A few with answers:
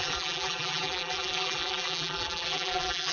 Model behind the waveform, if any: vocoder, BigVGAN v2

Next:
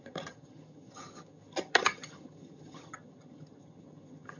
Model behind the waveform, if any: vocoder, HiFi-GAN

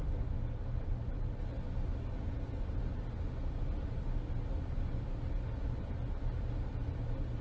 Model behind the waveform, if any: none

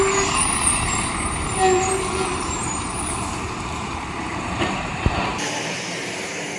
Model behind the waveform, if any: vocoder, BigVGAN v2